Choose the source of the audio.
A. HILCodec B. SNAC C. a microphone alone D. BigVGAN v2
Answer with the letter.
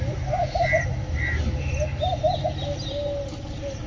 C